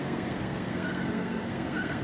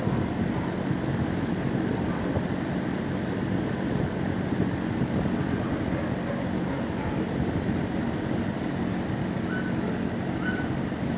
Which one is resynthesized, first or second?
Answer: first